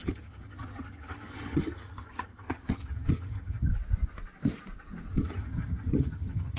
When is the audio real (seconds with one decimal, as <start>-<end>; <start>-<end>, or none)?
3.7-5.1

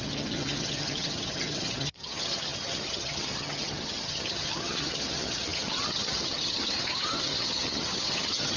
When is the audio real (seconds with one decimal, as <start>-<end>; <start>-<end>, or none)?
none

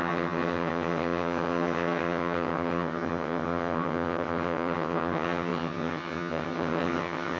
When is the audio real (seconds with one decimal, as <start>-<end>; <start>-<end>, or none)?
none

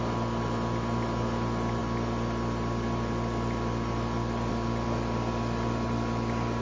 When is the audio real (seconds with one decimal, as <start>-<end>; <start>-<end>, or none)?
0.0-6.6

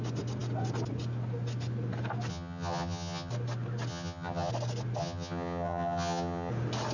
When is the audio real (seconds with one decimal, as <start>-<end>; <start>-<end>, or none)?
0.0-2.3; 3.3-3.9; 4.5-5.0; 6.5-6.9